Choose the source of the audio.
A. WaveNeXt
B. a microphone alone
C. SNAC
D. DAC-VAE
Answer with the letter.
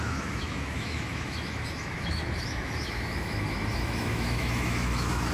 D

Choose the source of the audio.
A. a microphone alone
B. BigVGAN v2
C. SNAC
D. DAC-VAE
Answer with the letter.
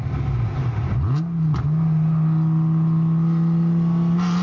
A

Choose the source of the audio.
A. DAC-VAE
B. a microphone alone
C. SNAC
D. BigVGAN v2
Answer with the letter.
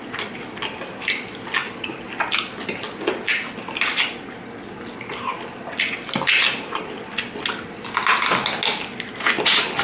B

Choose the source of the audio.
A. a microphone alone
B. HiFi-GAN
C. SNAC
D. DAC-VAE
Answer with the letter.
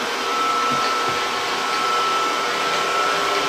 A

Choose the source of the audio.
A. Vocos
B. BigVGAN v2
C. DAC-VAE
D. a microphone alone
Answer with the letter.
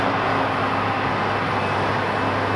D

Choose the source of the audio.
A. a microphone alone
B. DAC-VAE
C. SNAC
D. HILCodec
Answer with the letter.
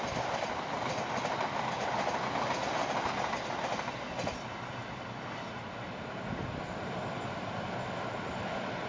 A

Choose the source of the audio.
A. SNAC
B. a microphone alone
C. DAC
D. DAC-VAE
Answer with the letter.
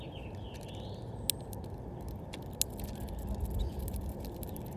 B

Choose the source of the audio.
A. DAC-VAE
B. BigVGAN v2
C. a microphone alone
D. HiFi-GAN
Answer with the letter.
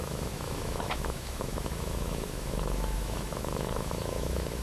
A